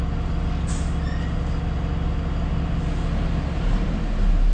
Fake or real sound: real